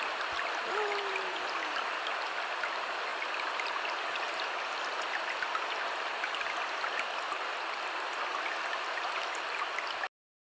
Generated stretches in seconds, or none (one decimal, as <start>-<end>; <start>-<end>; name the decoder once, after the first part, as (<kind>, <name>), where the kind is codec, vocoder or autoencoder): none